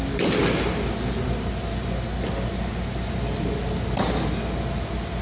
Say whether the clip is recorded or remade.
recorded